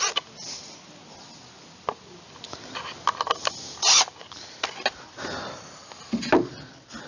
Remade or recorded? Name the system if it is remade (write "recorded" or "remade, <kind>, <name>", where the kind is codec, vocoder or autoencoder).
recorded